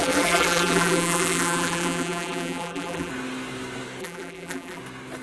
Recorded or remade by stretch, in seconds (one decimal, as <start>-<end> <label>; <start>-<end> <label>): 0.0-3.1 remade; 3.1-4.0 recorded; 4.0-4.8 remade; 4.8-5.2 recorded

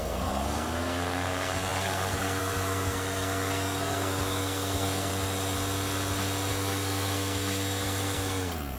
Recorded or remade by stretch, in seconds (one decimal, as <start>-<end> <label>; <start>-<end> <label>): 0.0-5.1 remade; 5.1-6.5 recorded; 6.5-8.8 remade